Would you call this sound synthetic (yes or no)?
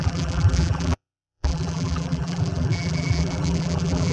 yes